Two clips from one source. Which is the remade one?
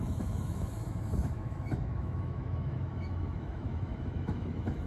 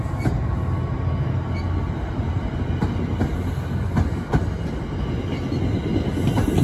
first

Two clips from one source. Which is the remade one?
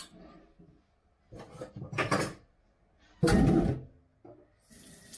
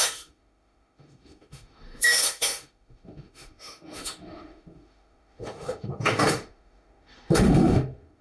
second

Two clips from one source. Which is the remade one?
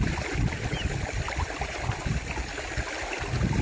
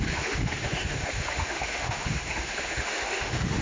second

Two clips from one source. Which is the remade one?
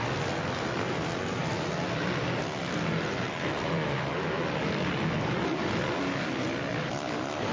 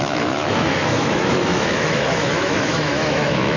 second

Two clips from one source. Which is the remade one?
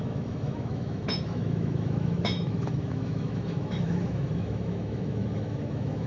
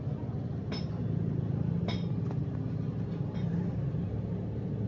first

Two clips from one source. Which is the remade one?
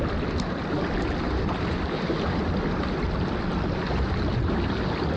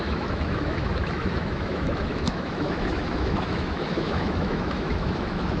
second